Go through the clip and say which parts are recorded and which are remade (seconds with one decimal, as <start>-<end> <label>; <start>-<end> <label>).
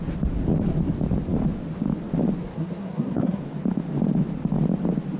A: 0.0-2.4 recorded; 2.4-3.4 remade; 3.4-5.2 recorded